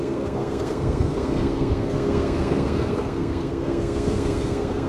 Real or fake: fake